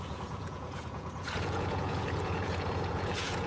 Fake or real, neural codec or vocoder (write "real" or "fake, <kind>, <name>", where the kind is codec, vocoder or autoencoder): fake, vocoder, Vocos